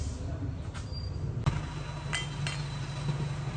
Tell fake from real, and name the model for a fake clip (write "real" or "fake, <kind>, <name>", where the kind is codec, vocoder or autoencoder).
real